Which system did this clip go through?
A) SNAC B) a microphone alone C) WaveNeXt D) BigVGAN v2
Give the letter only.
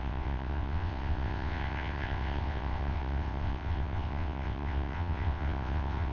C